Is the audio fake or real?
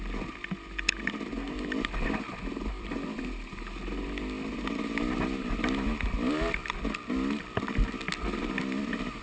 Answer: real